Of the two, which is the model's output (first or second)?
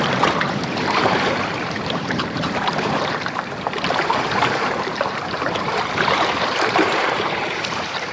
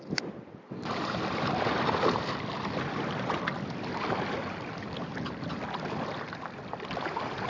first